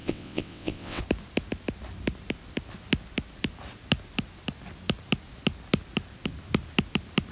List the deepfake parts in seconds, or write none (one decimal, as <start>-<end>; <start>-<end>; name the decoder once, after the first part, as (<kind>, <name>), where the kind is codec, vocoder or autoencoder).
0.0-1.0 (vocoder, WaveNeXt)